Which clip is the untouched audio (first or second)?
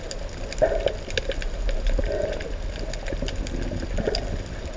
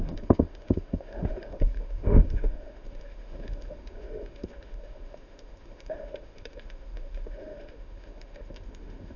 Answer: first